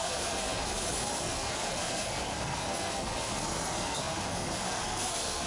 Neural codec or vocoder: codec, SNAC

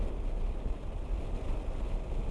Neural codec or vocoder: none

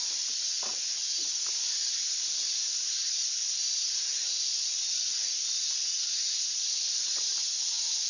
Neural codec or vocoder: none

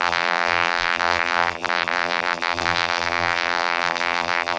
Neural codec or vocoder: vocoder, BigVGAN v2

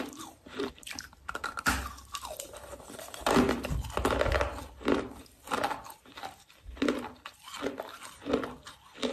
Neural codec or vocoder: vocoder, BigVGAN v2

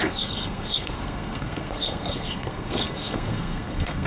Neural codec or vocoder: codec, SNAC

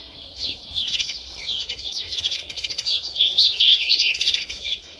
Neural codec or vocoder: codec, SNAC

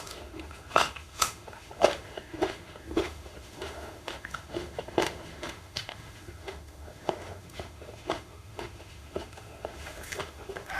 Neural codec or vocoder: autoencoder, DAC-VAE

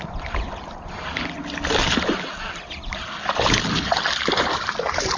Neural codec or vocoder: none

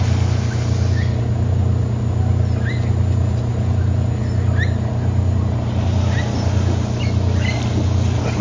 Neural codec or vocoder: none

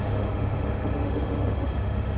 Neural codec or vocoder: autoencoder, DAC-VAE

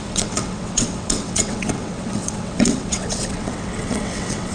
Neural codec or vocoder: vocoder, WaveNeXt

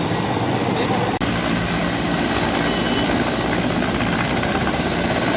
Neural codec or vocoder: none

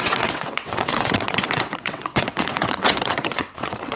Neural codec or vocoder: vocoder, WaveNeXt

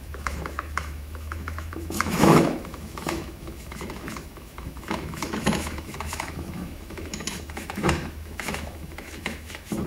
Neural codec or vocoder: autoencoder, DAC-VAE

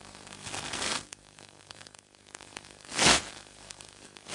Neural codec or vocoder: codec, SNAC